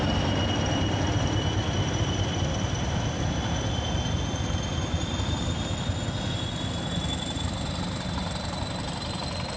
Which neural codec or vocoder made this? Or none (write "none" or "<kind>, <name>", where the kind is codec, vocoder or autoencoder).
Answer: none